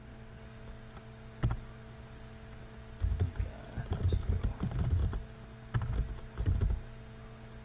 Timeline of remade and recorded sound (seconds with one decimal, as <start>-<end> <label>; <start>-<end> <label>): 0.0-7.6 recorded

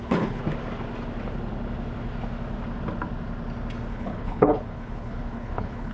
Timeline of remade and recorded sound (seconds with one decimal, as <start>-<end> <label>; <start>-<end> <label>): 0.0-0.4 remade; 0.4-3.9 recorded; 3.9-5.9 remade

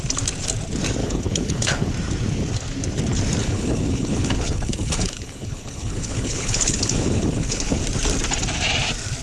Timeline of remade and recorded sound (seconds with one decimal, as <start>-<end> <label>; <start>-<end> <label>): 0.0-1.0 recorded; 1.0-1.9 remade; 1.9-3.4 recorded; 3.4-7.8 remade; 7.8-9.2 recorded